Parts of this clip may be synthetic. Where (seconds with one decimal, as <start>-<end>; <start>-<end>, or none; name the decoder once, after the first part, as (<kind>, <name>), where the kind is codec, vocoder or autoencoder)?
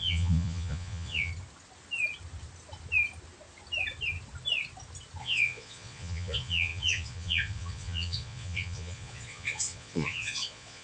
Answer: 0.0-1.3 (vocoder, Vocos); 5.2-10.8